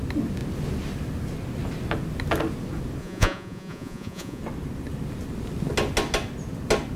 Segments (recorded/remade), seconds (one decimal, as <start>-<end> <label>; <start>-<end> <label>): 0.0-3.0 recorded; 3.0-4.4 remade; 4.4-7.0 recorded